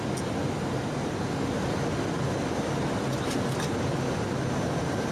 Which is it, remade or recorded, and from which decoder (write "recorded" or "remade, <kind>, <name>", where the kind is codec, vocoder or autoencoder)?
recorded